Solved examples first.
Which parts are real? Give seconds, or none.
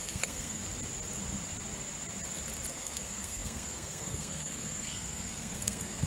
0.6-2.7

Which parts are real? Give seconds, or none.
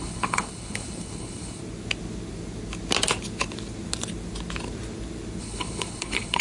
1.6-5.4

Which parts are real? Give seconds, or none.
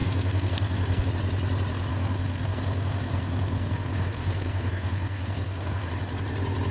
1.1-1.9; 5.9-6.7